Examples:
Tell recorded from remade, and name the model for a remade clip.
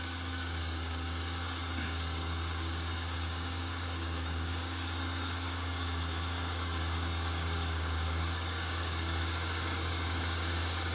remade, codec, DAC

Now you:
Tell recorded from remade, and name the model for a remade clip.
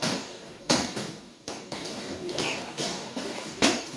remade, codec, DAC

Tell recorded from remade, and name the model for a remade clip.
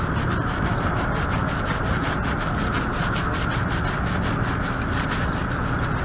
recorded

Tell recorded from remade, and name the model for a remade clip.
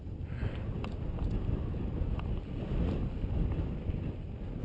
recorded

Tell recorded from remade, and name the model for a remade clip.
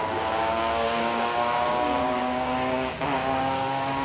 remade, codec, DAC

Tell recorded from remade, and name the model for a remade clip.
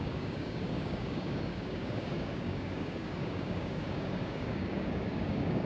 remade, codec, DAC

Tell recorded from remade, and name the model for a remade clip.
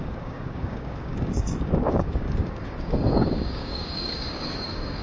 remade, codec, DAC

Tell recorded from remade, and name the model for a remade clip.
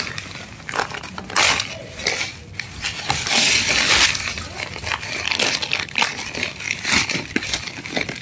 recorded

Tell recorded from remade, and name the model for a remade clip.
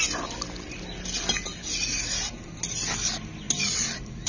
recorded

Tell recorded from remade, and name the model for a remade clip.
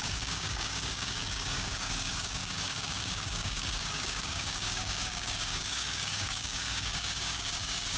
remade, codec, DAC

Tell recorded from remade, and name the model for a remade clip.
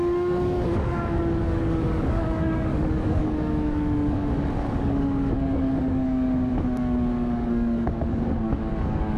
remade, codec, DAC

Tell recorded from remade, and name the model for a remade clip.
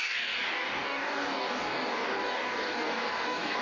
remade, codec, DAC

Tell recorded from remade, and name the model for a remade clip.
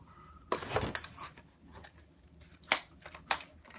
recorded